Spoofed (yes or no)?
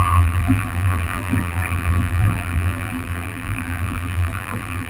yes